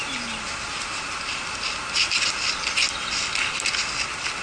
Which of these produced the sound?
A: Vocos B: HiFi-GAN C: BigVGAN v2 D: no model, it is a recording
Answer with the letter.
D